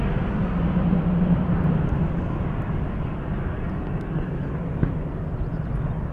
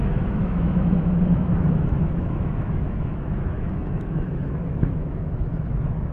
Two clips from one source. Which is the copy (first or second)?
second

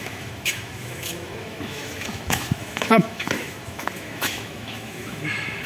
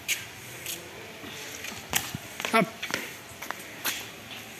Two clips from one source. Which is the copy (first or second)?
first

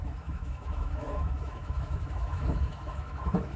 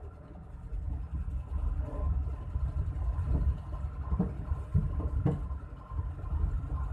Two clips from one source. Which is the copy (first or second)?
first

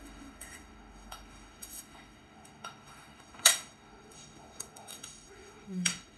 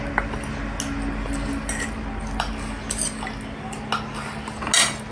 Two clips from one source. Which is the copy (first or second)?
first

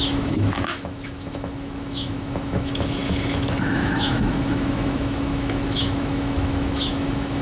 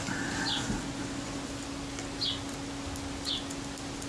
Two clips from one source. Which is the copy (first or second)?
first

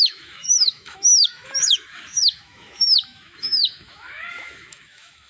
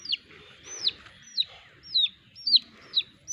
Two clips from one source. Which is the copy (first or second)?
first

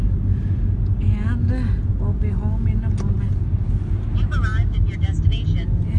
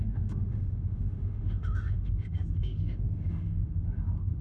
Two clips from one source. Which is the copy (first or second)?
second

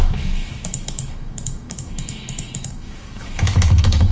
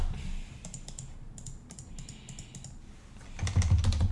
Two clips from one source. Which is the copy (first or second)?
first